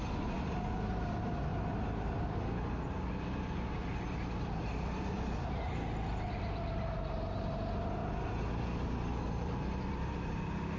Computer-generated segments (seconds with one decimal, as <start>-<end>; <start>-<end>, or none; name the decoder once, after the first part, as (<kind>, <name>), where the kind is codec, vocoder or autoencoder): none